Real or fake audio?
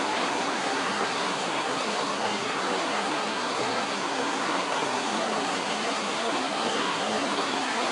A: fake